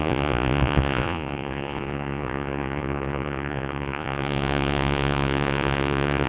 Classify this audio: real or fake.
fake